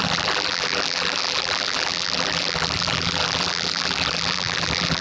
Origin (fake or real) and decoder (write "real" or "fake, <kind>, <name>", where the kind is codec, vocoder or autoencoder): fake, vocoder, BigVGAN v2